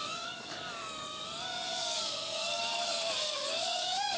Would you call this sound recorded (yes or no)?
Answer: no